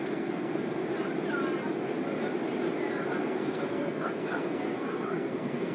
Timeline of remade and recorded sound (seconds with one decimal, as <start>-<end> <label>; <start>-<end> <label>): 0.0-0.8 remade; 0.8-3.2 recorded; 3.2-5.7 remade